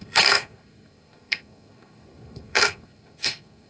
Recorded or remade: remade